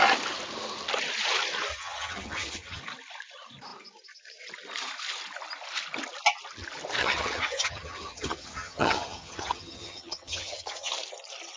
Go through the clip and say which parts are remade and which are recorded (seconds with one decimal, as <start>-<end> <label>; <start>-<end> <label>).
0.0-1.7 recorded; 1.7-2.8 remade; 2.8-7.0 recorded; 7.0-10.9 remade; 10.9-11.6 recorded